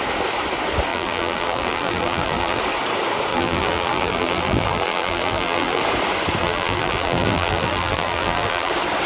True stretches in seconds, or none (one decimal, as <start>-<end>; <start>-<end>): 0.0-0.9; 2.6-3.3; 5.8-6.4; 8.7-9.1